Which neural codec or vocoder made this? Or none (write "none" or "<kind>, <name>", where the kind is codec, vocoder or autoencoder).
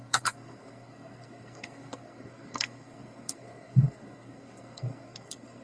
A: codec, SNAC